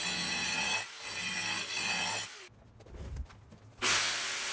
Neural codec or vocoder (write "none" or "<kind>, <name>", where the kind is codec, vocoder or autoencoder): none